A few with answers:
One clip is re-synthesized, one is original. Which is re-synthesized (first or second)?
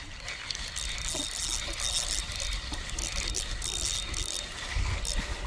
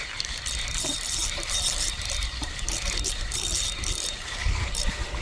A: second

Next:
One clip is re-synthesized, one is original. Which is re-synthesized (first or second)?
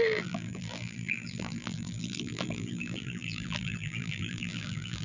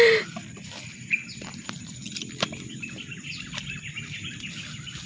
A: first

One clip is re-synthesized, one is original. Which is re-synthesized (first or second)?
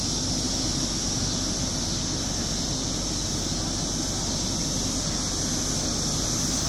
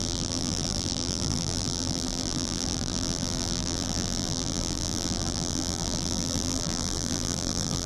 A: second